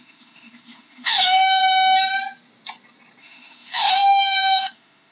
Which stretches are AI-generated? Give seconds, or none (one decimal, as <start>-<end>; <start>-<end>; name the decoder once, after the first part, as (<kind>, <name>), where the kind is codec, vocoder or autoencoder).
0.0-1.6 (autoencoder, DAC-VAE); 3.2-5.1